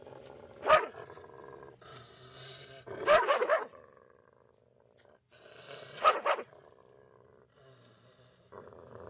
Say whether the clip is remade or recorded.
recorded